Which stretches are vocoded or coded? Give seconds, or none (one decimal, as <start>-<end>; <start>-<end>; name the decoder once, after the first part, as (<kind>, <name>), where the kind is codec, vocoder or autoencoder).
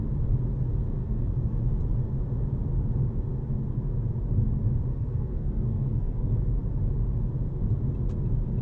1.0-1.6 (codec, SNAC); 4.9-6.4